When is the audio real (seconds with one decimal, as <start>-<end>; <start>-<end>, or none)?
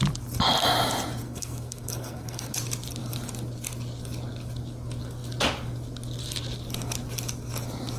0.0-1.2; 2.5-8.0